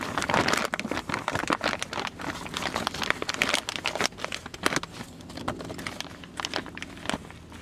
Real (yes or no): yes